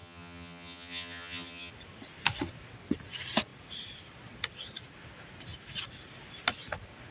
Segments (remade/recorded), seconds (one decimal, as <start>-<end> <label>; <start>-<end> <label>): 0.0-1.7 remade; 1.7-7.1 recorded